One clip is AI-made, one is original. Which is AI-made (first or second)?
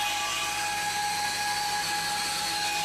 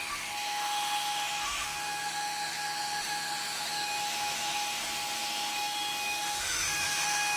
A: second